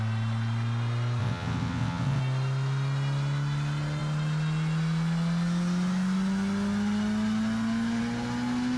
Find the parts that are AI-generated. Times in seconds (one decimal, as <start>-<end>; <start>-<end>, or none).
1.2-2.2